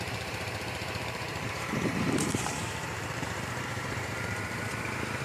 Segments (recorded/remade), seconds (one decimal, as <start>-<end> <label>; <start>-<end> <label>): 0.0-5.2 remade